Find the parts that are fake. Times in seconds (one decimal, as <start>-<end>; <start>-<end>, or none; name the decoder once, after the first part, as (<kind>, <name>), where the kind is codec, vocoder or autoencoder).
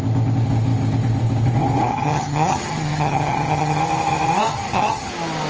1.9-3.8 (vocoder, HiFi-GAN); 4.5-5.1